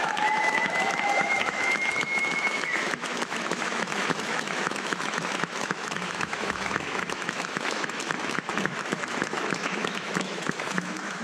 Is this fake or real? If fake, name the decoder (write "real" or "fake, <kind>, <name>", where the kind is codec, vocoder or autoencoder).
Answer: fake, autoencoder, DAC-VAE